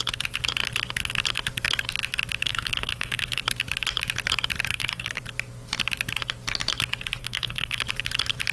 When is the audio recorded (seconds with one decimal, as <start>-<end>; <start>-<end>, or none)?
0.0-2.4; 3.4-4.7; 5.2-7.2; 7.8-8.5